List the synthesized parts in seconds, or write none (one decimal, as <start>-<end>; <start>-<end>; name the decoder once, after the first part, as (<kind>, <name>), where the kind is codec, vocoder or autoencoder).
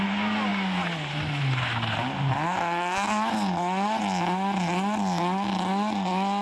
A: none